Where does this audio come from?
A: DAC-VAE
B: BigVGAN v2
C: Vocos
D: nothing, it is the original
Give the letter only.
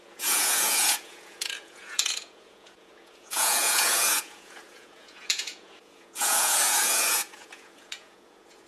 C